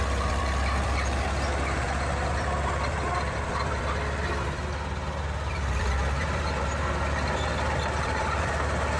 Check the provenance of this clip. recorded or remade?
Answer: remade